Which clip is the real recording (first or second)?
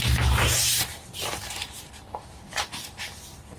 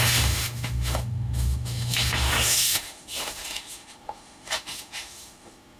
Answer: first